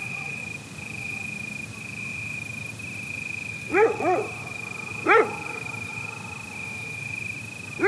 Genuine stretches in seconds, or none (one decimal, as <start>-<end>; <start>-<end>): 0.4-3.5; 4.2-7.9